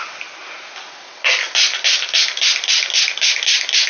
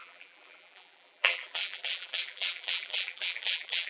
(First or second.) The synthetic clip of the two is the second